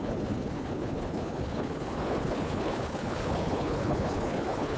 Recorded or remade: remade